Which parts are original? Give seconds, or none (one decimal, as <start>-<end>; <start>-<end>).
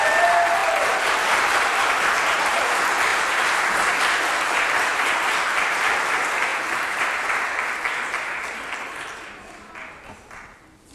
0.0-0.6; 2.7-3.1; 4.0-4.9; 6.0-6.5; 7.6-10.9